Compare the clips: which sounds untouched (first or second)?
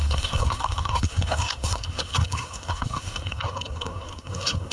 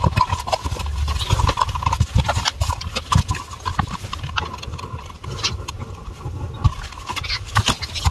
second